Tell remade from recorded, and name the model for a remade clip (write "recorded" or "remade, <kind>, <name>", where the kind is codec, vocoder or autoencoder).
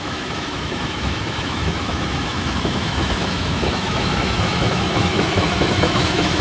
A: remade, autoencoder, DAC-VAE